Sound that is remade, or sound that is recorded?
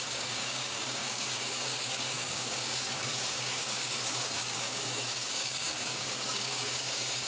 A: remade